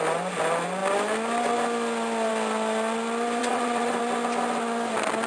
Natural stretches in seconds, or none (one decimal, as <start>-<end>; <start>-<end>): 0.0-3.4; 4.0-5.3